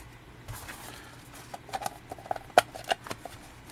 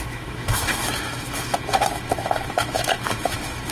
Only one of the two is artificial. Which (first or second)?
second